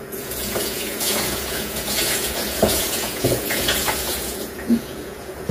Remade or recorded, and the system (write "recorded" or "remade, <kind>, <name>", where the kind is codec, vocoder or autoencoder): remade, vocoder, Vocos